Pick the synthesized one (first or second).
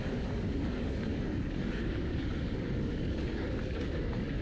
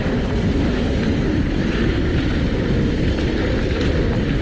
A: first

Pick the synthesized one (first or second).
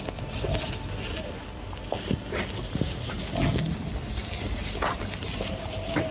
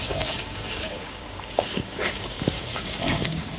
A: second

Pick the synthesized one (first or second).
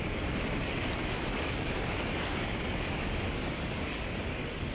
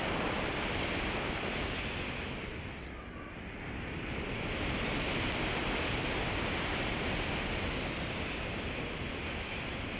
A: first